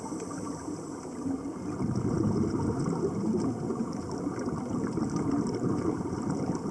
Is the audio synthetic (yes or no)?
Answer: no